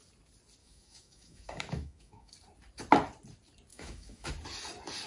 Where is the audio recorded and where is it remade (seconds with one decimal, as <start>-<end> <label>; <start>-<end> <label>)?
0.0-0.6 recorded; 0.6-2.3 remade; 2.3-3.7 recorded; 3.7-4.3 remade; 4.3-5.1 recorded